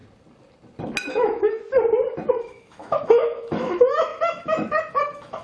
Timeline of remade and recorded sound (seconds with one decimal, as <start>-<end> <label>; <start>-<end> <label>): 0.0-1.1 recorded; 1.1-1.6 remade; 1.6-2.3 recorded; 2.3-5.4 remade